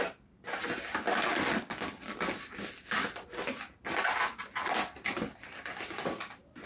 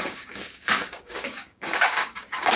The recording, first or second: first